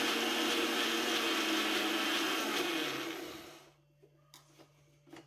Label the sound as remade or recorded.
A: recorded